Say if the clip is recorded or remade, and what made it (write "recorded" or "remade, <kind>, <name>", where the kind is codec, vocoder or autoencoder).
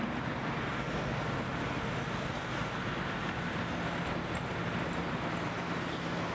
recorded